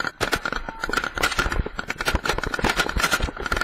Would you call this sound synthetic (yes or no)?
no